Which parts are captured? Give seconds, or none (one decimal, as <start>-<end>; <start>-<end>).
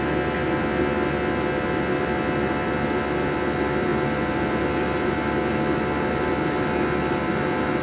0.0-7.8